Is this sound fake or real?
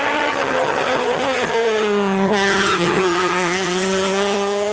fake